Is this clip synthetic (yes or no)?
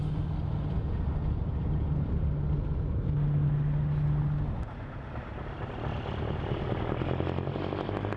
no